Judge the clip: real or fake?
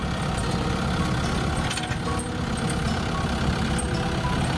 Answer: real